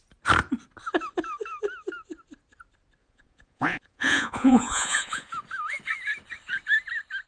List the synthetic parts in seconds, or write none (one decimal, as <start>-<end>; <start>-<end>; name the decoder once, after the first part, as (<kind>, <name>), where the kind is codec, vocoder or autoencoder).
3.0-5.3 (vocoder, Vocos)